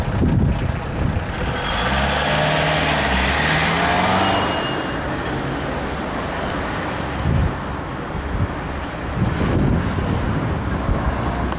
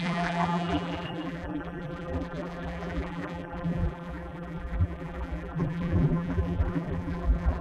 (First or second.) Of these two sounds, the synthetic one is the second